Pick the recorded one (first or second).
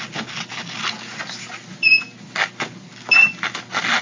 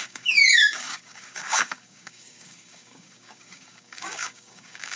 first